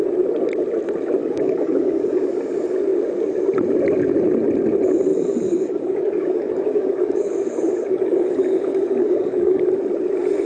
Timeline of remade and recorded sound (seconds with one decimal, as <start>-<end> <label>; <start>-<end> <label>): 0.0-1.2 recorded; 1.2-2.2 remade; 2.2-5.1 recorded; 5.1-9.6 remade; 9.6-10.5 recorded